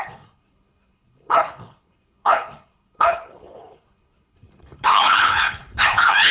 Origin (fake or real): fake